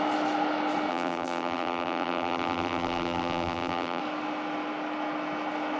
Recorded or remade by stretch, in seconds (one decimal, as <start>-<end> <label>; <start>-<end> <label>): 0.0-0.9 recorded; 0.9-4.0 remade; 4.0-5.8 recorded